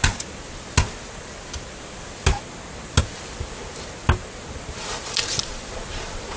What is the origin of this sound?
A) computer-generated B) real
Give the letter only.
B